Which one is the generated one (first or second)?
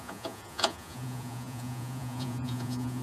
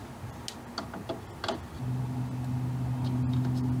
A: first